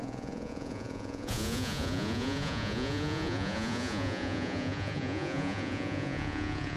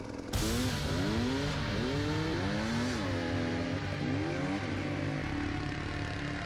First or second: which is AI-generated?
first